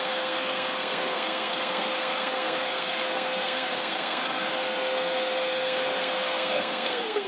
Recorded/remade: remade